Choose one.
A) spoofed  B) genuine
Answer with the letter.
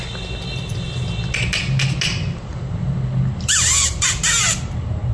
B